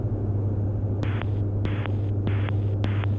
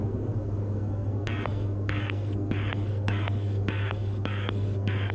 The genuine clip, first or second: first